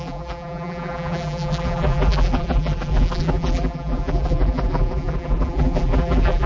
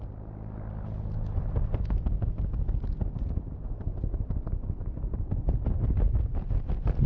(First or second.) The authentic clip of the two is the second